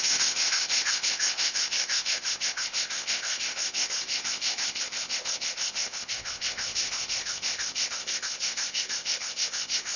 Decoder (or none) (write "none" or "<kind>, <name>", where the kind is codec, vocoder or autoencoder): codec, ZipCodec